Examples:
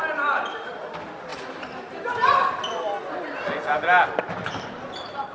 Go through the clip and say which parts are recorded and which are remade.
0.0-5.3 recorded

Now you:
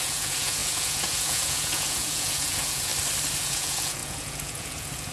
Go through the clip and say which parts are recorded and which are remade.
0.0-2.9 remade; 2.9-3.4 recorded; 3.4-5.1 remade

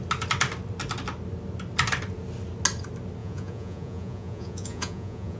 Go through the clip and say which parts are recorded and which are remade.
0.0-3.2 recorded; 3.2-5.4 remade

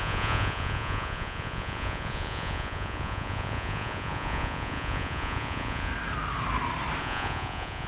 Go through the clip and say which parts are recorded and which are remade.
0.0-5.9 remade; 5.9-7.0 recorded; 7.0-7.9 remade